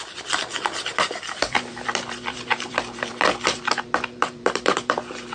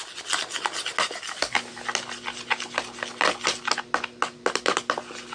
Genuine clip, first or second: second